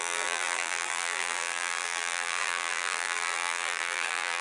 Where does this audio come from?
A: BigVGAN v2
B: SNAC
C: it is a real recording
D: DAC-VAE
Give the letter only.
A